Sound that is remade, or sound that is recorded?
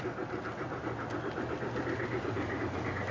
recorded